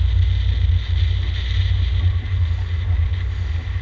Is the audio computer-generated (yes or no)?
no